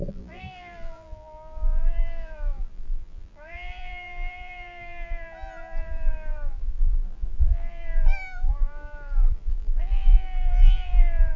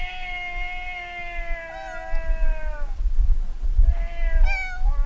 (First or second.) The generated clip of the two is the first